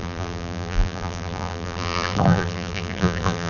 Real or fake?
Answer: fake